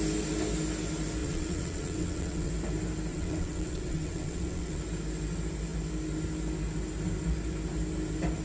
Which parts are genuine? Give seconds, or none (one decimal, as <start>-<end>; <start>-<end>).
0.0-1.2; 2.5-3.1; 4.8-8.4